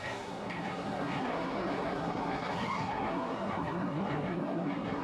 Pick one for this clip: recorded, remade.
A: remade